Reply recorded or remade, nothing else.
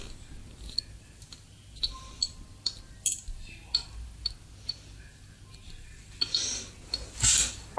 recorded